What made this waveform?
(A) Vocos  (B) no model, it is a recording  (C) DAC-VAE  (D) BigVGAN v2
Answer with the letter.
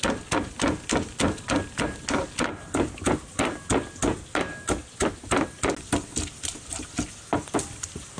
B